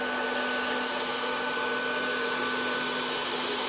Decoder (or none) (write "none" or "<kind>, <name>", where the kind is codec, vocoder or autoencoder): none